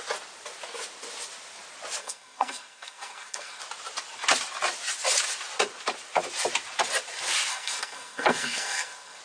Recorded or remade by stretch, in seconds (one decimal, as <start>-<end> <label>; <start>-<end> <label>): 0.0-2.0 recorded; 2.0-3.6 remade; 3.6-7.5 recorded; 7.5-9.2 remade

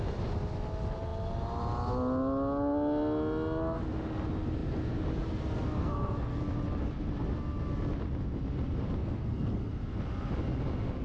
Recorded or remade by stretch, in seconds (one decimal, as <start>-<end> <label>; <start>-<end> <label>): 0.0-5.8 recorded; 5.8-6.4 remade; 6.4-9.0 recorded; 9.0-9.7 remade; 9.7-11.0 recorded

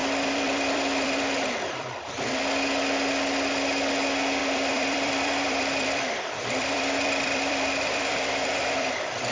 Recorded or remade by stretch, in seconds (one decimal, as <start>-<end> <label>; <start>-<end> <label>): 0.0-2.4 remade; 2.4-4.4 recorded; 4.4-9.3 remade

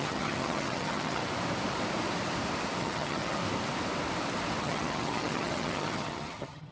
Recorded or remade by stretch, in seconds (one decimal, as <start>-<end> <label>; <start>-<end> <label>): 0.0-1.2 remade; 1.2-2.8 recorded; 2.8-3.4 remade; 3.4-4.6 recorded; 4.6-6.7 remade

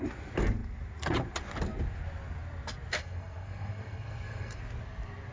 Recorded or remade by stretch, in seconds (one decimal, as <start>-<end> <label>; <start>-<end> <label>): 0.0-3.0 recorded; 3.0-4.6 remade; 4.6-5.3 recorded

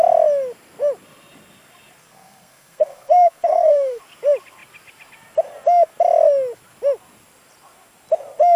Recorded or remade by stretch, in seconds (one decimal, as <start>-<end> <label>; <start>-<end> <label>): 0.0-2.0 recorded; 2.0-4.0 remade; 4.0-8.6 recorded